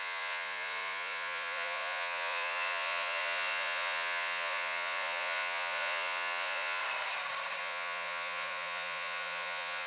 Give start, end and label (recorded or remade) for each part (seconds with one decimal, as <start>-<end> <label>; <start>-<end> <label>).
0.0-6.8 remade; 6.8-7.6 recorded; 7.6-9.9 remade